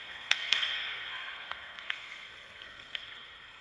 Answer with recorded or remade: remade